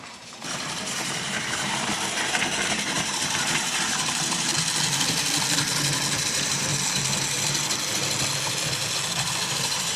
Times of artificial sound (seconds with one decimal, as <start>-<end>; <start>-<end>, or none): 0.0-4.5; 6.2-6.7; 9.5-10.0